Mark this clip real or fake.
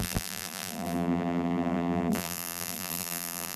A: fake